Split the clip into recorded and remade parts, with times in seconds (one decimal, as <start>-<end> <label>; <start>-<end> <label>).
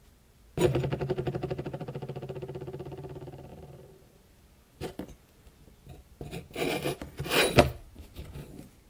0.0-3.5 recorded; 3.5-6.2 remade; 6.2-8.9 recorded